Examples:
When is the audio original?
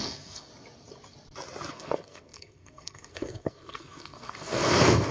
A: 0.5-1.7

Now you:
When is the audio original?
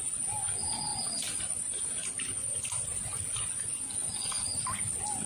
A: 0.0-5.3